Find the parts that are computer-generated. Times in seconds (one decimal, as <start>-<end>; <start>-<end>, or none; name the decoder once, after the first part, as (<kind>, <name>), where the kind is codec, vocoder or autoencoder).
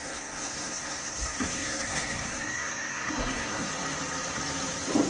0.0-3.7 (codec, SNAC)